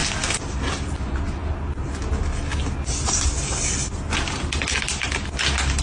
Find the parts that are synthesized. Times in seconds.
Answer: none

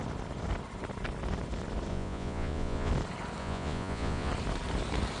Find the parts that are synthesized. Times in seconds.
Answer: 1.9-2.9; 3.4-4.3